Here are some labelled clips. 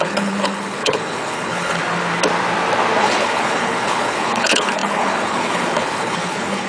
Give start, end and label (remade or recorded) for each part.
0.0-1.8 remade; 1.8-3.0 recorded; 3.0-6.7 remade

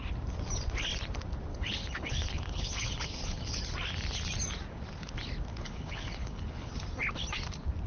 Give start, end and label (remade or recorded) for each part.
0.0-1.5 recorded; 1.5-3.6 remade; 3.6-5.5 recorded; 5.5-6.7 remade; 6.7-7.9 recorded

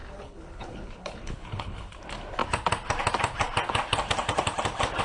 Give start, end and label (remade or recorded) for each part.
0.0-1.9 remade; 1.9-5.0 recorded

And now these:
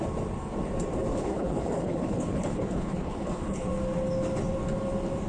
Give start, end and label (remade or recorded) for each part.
0.0-1.1 recorded; 1.1-3.7 remade; 3.7-5.3 recorded

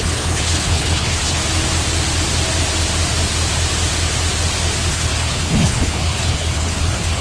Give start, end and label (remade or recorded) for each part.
0.0-1.4 remade; 1.4-4.9 recorded; 4.9-7.2 remade

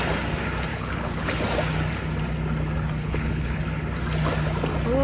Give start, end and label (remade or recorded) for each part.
0.0-0.7 recorded; 0.7-1.4 remade; 1.4-3.0 recorded; 3.0-3.6 remade; 3.6-5.0 recorded